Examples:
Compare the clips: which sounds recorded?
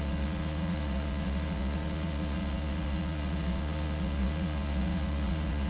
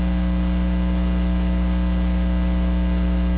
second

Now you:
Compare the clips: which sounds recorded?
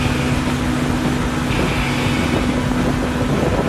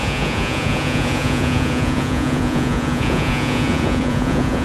first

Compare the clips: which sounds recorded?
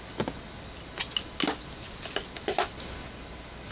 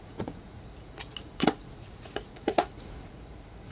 first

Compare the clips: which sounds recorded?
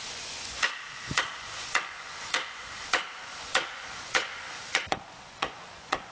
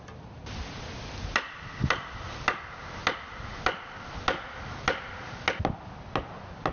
second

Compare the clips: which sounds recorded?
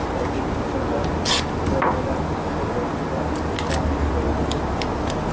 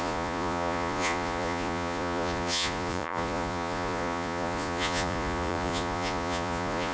first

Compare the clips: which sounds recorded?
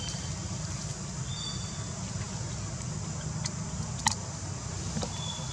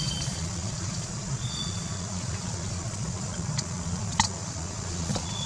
first